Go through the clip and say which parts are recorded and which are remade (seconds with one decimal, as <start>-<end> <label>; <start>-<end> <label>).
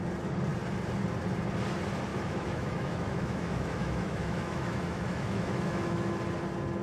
0.0-2.1 recorded; 2.1-6.2 remade; 6.2-6.8 recorded